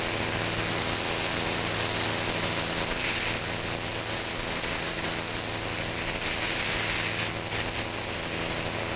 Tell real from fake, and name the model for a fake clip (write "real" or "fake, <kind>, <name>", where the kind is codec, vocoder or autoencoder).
real